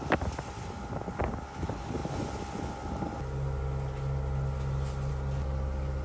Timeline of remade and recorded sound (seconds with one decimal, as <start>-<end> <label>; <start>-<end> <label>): 0.0-6.0 recorded